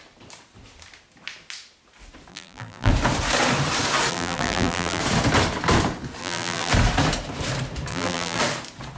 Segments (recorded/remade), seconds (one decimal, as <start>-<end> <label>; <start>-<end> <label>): 0.0-2.3 recorded; 2.3-2.9 remade; 2.9-4.1 recorded; 4.1-5.0 remade; 5.0-6.2 recorded; 6.2-6.7 remade; 6.7-7.9 recorded; 7.9-8.4 remade; 8.4-9.0 recorded